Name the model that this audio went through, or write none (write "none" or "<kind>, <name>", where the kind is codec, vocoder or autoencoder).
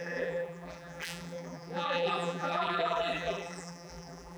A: vocoder, BigVGAN v2